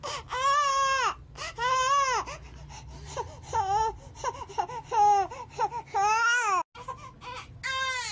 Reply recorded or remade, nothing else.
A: recorded